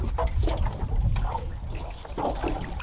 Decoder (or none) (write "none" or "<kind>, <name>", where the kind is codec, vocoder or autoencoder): none